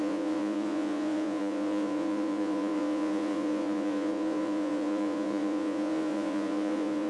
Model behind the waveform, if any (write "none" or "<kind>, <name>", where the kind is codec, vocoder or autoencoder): vocoder, Vocos